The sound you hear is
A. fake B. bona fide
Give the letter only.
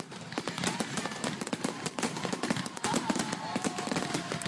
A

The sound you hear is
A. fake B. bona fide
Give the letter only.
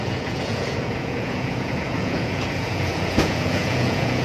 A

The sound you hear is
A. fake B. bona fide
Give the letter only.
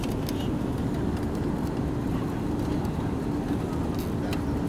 B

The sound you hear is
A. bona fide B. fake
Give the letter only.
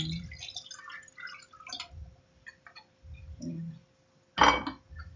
A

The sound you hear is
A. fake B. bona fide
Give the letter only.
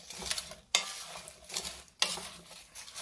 B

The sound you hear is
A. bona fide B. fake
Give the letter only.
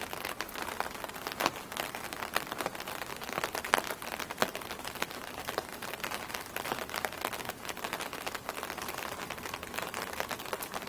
A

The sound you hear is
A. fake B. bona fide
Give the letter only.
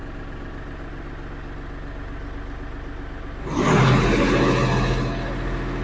B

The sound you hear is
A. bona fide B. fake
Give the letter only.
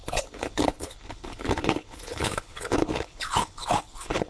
B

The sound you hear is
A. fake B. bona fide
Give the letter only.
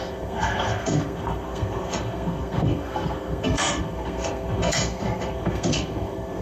A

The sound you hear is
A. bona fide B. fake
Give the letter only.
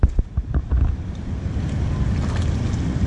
A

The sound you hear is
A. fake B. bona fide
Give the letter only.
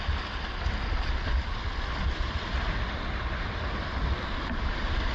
B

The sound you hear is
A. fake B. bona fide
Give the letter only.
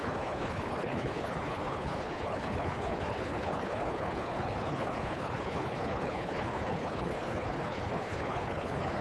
A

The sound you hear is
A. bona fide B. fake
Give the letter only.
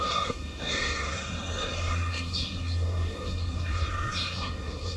B